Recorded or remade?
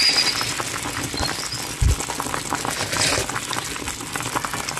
recorded